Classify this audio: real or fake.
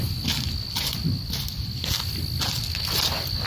real